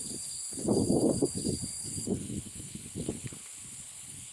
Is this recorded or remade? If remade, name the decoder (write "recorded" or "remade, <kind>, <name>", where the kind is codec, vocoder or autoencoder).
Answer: remade, codec, HILCodec